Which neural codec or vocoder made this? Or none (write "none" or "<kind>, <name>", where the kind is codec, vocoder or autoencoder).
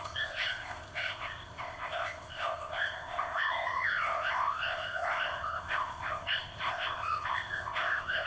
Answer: codec, ZipCodec